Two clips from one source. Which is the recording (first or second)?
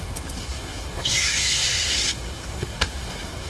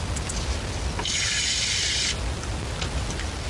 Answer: second